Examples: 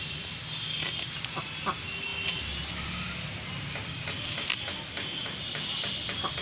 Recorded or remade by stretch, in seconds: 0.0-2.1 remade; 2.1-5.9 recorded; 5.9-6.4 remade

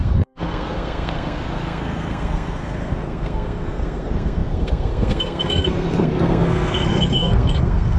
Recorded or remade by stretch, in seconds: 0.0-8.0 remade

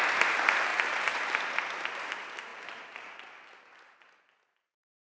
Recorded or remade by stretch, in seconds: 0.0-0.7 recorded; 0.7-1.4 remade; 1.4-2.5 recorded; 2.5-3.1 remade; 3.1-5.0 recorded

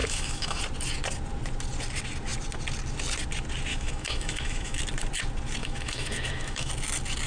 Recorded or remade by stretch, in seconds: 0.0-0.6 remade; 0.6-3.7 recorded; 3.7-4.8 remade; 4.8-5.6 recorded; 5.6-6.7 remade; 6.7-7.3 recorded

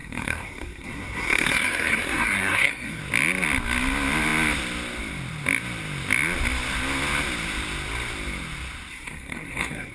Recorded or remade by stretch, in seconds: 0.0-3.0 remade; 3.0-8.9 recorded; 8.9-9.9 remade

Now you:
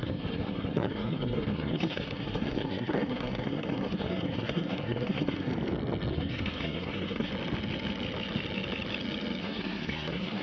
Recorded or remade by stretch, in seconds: 0.0-5.5 remade; 5.5-6.1 recorded; 6.1-7.3 remade; 7.3-9.4 recorded; 9.4-10.4 remade

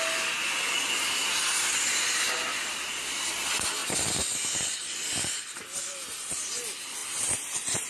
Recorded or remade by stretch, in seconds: 0.0-3.8 recorded; 3.8-4.4 remade; 4.4-7.0 recorded; 7.0-7.9 remade

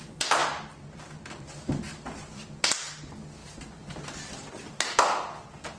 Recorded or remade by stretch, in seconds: 0.0-0.4 recorded; 0.4-2.7 remade; 2.7-5.8 recorded